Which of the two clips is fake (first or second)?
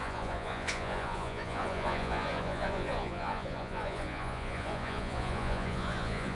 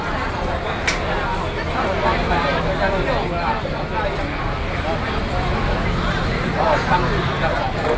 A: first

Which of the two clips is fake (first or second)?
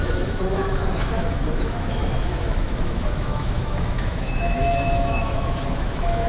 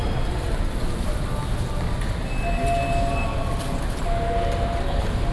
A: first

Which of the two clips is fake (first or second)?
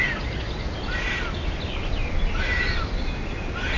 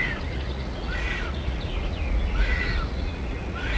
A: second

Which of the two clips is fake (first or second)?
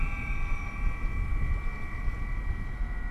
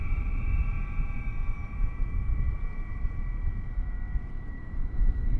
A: second